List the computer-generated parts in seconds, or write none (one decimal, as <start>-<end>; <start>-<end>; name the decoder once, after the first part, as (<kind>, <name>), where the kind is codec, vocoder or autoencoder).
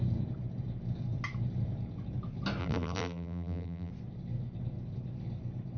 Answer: 2.6-3.9 (vocoder, BigVGAN v2)